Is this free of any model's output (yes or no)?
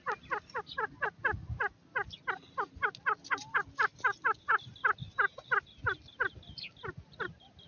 yes